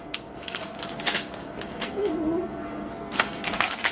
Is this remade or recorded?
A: remade